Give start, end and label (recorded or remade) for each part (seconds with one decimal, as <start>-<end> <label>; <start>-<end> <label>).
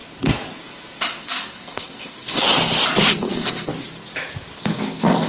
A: 0.0-1.2 recorded; 1.2-2.5 remade; 2.5-3.1 recorded; 3.1-3.7 remade; 3.7-4.6 recorded; 4.6-5.3 remade